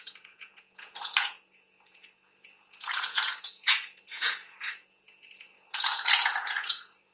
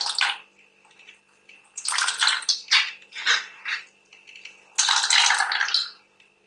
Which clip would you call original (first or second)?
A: second